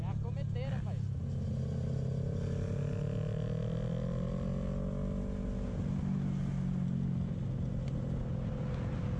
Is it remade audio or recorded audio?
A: recorded